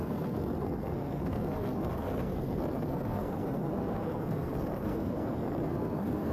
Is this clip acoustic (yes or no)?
no